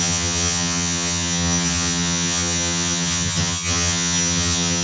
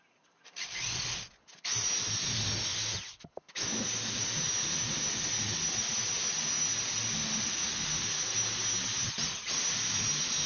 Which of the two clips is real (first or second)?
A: second